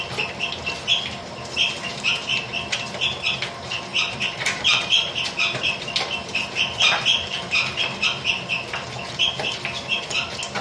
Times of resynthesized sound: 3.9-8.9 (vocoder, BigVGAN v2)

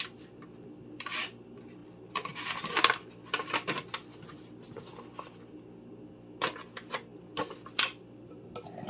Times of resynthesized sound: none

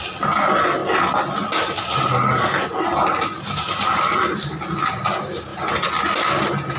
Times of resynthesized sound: none

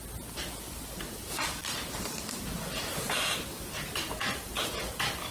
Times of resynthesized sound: none

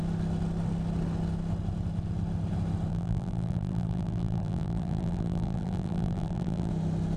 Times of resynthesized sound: 2.9-6.7 (vocoder, BigVGAN v2)

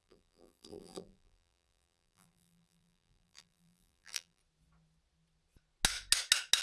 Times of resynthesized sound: 0.0-4.4 (vocoder, BigVGAN v2)

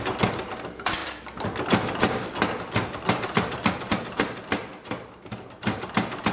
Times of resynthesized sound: 1.0-3.9 (vocoder, BigVGAN v2); 4.7-5.5

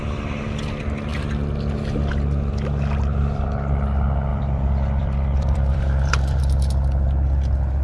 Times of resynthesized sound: 4.3-6.4 (vocoder, BigVGAN v2)